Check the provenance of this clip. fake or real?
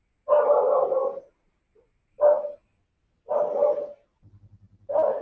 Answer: real